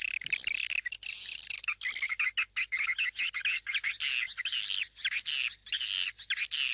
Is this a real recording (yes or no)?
yes